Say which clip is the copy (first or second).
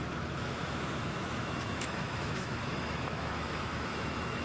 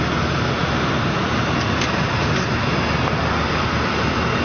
first